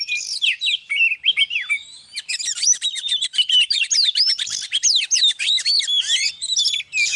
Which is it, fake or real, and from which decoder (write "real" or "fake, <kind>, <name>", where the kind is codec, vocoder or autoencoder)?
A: real